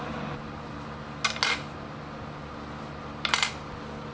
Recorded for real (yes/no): yes